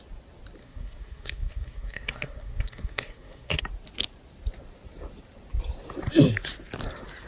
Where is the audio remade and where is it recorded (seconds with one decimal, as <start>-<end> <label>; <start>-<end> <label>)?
0.0-0.6 recorded; 0.6-3.6 remade; 3.6-7.3 recorded